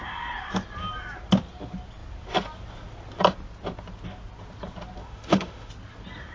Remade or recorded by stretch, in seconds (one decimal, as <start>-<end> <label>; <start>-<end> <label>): 0.0-5.0 recorded; 5.0-5.7 remade; 5.7-6.3 recorded